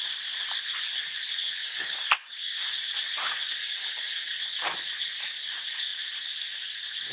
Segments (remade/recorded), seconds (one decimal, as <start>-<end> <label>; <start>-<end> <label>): 0.0-1.6 recorded; 1.6-2.6 remade; 2.6-3.6 recorded; 3.6-4.3 remade; 4.3-7.1 recorded